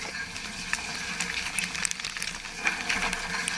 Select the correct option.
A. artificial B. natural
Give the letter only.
B